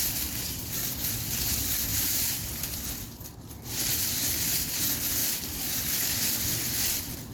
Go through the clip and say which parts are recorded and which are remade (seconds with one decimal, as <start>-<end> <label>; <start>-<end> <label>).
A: 0.0-7.3 remade